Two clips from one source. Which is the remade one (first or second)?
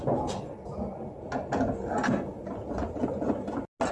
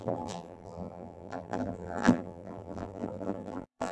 second